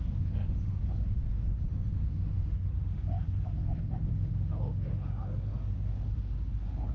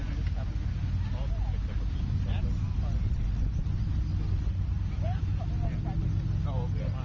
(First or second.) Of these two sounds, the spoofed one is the first